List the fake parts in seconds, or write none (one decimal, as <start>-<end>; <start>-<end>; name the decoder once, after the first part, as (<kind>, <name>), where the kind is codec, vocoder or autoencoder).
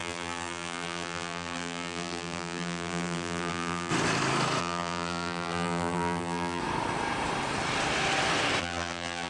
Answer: 0.0-3.9 (vocoder, BigVGAN v2); 4.6-6.6; 8.6-9.3